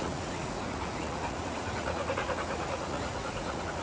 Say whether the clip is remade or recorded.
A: remade